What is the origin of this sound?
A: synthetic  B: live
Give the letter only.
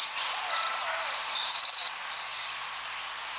B